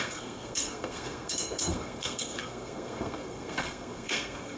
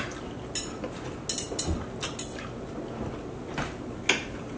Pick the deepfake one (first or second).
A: first